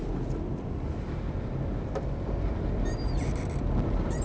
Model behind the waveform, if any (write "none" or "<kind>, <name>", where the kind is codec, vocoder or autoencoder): none